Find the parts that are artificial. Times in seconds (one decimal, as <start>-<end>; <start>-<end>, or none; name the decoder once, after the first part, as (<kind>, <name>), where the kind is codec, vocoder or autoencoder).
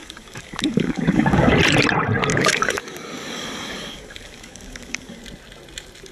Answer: 0.0-1.5 (codec, DAC); 2.3-5.2